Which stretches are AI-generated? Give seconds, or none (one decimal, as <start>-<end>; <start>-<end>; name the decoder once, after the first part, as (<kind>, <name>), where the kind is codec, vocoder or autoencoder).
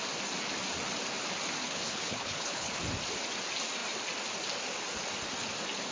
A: 1.6-2.8 (codec, HILCodec)